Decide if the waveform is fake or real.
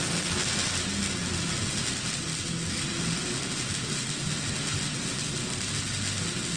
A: real